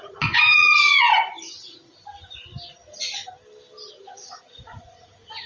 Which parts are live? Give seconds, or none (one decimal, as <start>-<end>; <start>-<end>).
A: 1.1-3.9